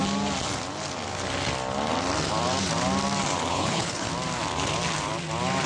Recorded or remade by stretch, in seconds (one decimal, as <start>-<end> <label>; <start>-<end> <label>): 0.0-3.5 recorded; 3.5-4.1 remade; 4.1-5.7 recorded